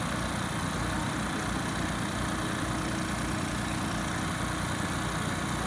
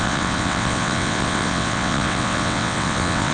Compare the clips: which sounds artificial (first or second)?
second